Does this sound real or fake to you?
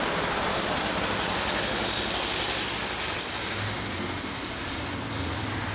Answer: real